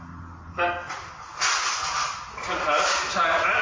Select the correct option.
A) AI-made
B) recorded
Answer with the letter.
B